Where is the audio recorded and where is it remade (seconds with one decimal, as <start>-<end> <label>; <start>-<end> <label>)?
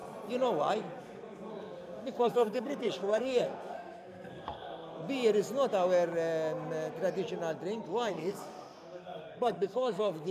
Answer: 0.0-1.0 recorded; 1.0-4.9 remade; 4.9-8.1 recorded; 8.1-10.3 remade